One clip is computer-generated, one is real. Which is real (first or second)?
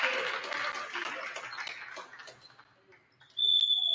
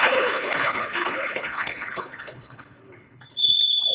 first